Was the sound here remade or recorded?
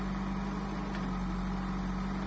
recorded